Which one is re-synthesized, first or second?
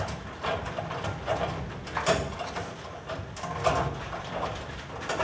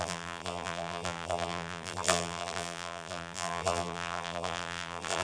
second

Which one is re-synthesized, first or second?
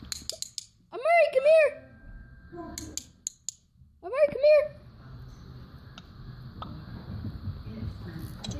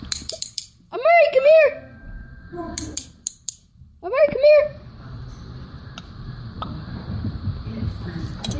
second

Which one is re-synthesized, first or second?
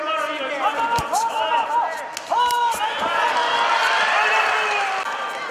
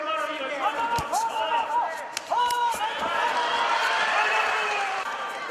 second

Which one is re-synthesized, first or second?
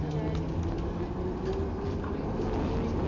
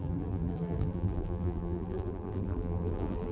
second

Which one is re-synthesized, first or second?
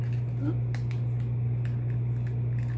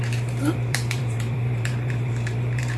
second